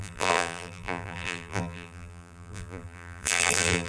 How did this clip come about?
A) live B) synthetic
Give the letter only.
B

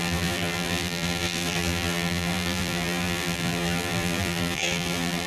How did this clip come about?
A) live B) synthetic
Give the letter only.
B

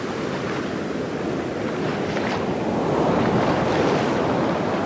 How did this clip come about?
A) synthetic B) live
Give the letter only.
B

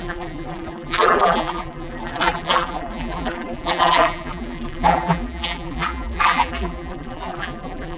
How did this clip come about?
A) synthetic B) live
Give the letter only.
A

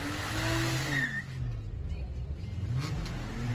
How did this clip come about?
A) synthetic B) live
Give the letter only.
B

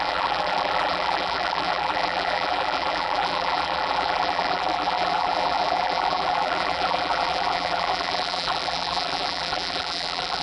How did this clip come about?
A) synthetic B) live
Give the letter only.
A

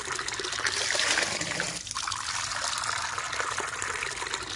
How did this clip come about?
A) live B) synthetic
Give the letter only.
A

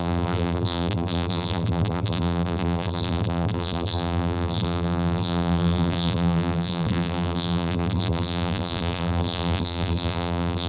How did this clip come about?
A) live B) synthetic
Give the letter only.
B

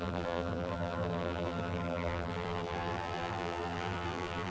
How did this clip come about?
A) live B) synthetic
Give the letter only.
B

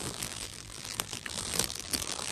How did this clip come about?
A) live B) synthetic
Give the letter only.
B